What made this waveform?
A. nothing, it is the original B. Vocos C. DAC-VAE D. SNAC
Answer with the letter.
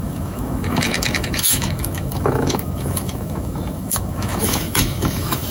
C